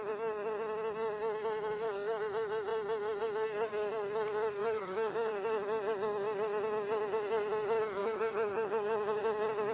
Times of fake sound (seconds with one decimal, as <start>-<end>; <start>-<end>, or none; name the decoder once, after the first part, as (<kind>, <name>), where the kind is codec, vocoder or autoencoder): 4.6-5.3 (vocoder, HiFi-GAN); 8.0-9.2